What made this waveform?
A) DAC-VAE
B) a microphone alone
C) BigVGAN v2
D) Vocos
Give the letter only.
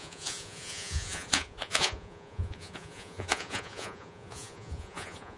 D